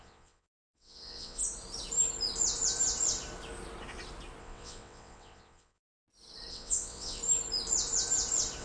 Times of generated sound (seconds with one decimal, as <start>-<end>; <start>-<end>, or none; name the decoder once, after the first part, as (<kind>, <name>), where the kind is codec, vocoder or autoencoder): 0.0-1.4 (vocoder, WaveNeXt); 4.4-5.9; 6.5-7.2